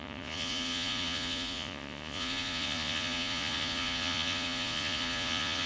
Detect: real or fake fake